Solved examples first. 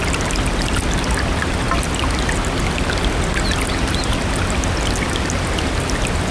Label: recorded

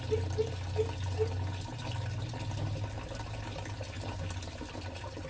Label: recorded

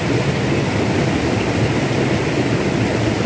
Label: recorded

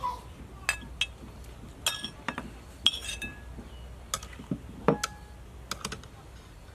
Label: recorded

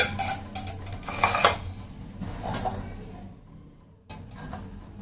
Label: recorded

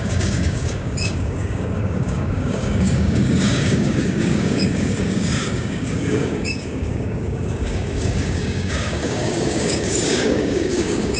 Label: remade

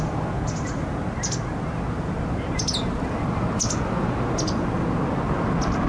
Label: recorded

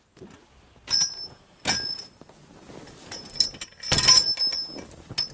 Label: recorded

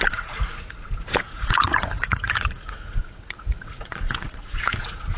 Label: remade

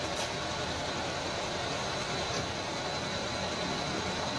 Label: recorded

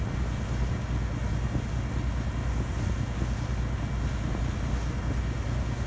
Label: recorded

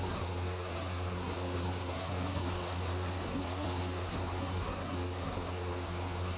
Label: remade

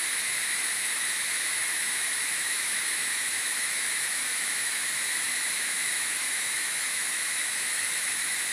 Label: remade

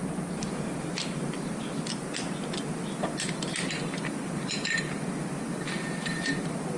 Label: recorded